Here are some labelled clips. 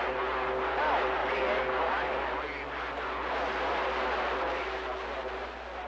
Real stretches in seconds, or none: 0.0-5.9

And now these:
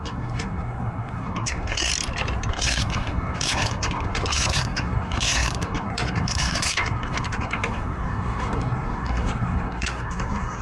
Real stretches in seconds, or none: 1.9-2.5

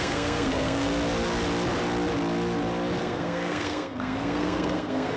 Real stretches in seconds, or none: 0.9-3.0